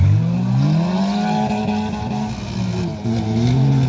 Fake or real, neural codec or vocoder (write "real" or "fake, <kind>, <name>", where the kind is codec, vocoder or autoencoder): real